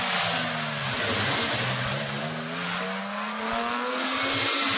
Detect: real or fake real